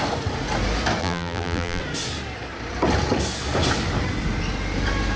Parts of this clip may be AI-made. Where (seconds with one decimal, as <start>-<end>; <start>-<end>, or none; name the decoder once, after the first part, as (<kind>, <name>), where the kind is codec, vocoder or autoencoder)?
1.0-1.8 (vocoder, BigVGAN v2)

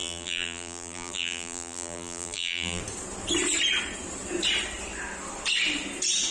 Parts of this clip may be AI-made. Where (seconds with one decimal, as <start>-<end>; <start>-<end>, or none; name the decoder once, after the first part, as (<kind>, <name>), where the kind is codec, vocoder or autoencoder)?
0.0-2.8 (vocoder, BigVGAN v2)